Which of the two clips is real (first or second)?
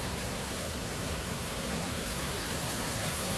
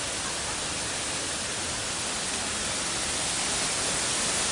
second